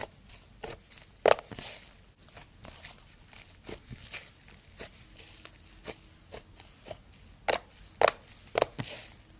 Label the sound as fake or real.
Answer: real